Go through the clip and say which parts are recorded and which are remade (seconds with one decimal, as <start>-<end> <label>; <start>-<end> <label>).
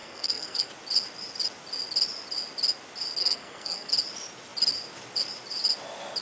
0.0-0.7 remade; 0.7-3.2 recorded; 3.2-3.9 remade; 3.9-6.2 recorded